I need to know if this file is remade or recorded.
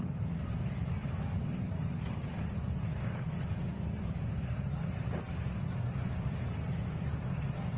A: recorded